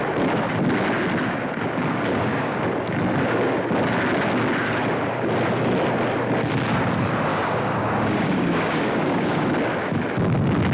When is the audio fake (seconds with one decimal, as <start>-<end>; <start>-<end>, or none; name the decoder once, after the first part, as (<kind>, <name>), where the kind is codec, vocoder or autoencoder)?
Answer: 1.8-2.6 (codec, DAC); 7.3-9.5